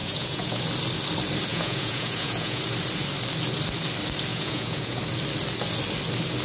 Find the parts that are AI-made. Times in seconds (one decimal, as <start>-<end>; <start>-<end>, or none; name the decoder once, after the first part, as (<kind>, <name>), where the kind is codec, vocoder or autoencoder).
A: 0.0-0.6 (vocoder, Vocos); 1.5-2.6; 4.3-5.0